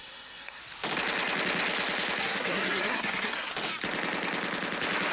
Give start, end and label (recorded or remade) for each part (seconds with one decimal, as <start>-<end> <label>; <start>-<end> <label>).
0.0-0.6 remade; 0.6-2.2 recorded; 2.2-3.5 remade; 3.5-5.1 recorded